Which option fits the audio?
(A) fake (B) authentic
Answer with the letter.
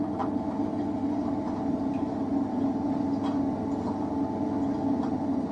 B